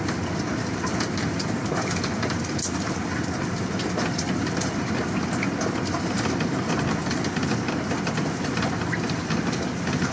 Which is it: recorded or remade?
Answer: recorded